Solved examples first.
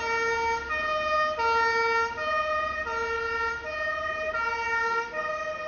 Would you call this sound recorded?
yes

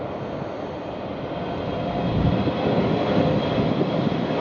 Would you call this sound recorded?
yes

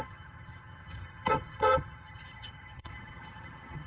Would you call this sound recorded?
no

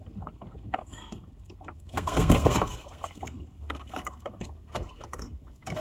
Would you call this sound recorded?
no